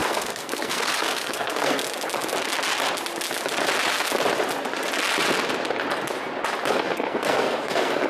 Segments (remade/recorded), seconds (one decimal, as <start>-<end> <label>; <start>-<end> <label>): 0.0-1.8 remade; 1.8-6.7 recorded; 6.7-8.1 remade